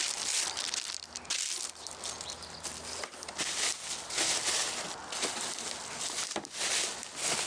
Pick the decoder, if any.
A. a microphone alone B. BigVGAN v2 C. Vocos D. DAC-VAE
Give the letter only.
A